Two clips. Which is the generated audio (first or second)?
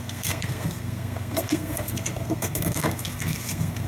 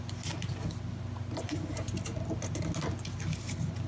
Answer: first